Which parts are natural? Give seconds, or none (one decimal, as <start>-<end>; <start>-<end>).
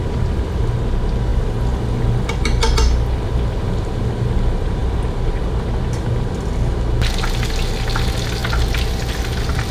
0.0-9.7